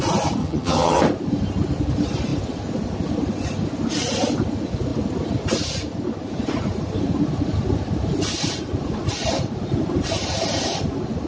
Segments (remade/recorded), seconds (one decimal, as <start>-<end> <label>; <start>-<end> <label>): 0.0-0.4 recorded; 0.4-1.0 remade; 1.0-11.3 recorded